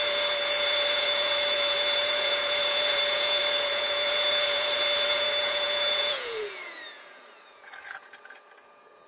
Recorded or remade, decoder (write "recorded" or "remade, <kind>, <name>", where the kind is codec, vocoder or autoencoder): remade, vocoder, Vocos